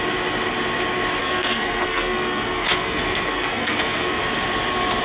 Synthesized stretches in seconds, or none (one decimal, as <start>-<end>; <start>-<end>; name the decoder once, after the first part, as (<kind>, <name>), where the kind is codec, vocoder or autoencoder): 1.2-4.2 (codec, SNAC)